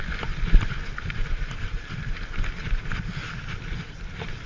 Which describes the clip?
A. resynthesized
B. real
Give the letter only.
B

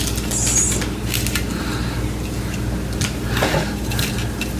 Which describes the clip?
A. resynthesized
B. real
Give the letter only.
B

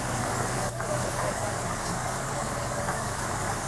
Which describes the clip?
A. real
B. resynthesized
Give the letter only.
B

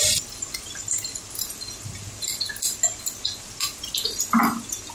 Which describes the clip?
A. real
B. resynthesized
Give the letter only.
A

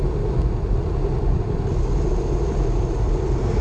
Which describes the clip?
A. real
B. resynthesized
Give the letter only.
A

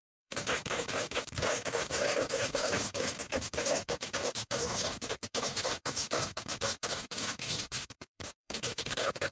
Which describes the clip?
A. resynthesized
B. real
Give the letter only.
A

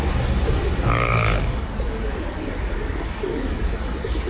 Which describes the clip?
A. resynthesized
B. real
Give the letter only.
A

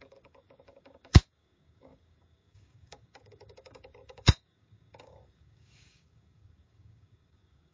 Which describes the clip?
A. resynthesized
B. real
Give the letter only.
A